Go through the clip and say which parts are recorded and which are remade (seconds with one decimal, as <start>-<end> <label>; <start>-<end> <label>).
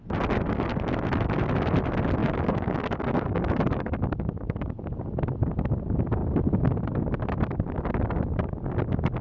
0.0-2.2 recorded; 2.2-5.2 remade; 5.2-9.2 recorded